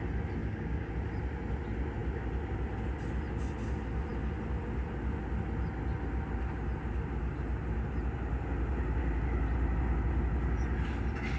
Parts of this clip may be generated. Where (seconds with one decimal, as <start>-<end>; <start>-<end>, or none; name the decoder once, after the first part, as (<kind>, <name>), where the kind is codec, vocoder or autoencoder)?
0.4-0.9 (codec, DAC)